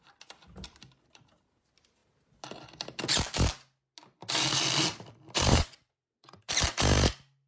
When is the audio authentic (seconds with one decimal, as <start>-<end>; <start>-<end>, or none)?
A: 0.0-5.5; 6.4-7.5